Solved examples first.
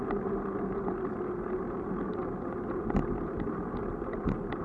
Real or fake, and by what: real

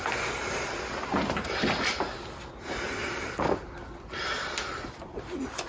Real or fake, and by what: real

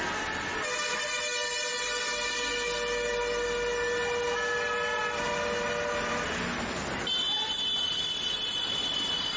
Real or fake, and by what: real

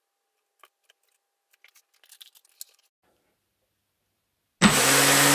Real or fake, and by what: real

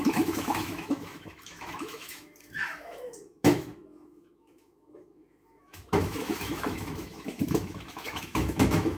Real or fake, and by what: fake, autoencoder, DAC-VAE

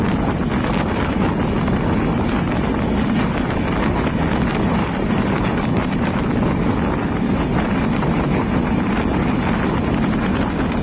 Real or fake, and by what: real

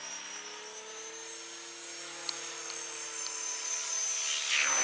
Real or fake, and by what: real